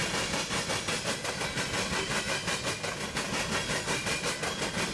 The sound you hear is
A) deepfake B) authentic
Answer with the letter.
B